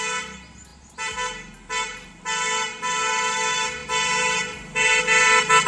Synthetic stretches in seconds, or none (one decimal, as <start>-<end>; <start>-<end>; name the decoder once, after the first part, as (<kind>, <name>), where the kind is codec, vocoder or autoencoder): none